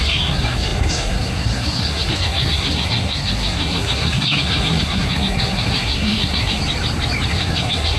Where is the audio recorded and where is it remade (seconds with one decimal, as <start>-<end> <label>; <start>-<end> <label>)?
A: 0.0-6.6 remade; 6.6-7.3 recorded; 7.3-8.0 remade